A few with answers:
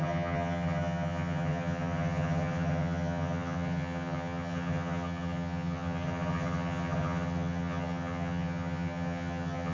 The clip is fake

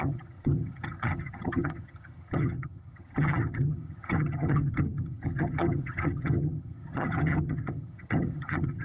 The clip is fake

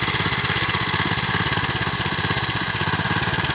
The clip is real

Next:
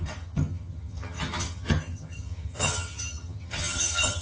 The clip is fake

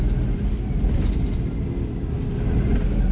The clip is real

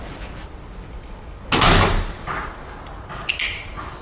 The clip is real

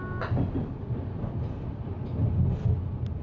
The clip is real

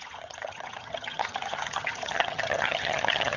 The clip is fake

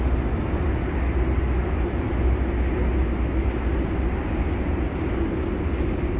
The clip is real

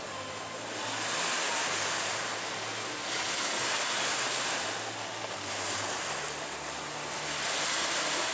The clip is real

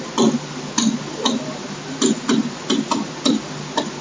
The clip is real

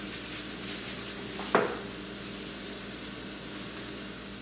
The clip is real